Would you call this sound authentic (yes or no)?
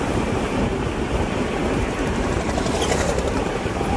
no